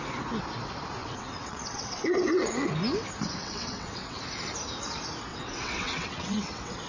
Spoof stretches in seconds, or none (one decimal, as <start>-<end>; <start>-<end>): 1.0-2.7; 3.4-4.2; 5.3-6.9